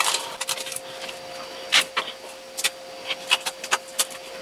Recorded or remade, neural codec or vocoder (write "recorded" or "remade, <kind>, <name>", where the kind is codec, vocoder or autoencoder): recorded